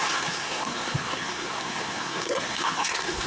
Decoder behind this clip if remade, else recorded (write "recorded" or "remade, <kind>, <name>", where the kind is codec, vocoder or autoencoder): remade, codec, SNAC